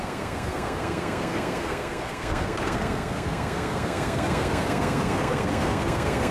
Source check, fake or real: fake